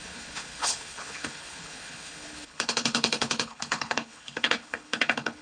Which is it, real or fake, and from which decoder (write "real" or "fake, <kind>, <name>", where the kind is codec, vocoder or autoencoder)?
fake, codec, HILCodec